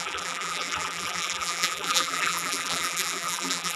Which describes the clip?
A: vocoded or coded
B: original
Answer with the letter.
A